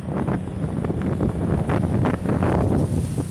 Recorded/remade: recorded